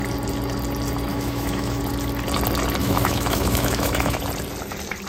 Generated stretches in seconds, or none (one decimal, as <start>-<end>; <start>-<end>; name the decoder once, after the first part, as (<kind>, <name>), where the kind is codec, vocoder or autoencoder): 1.1-1.8 (autoencoder, DAC-VAE); 2.8-4.2